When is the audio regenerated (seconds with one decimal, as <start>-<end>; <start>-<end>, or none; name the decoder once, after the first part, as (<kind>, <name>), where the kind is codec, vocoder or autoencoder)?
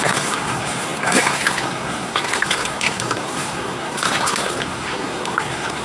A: 0.0-5.8 (codec, SNAC)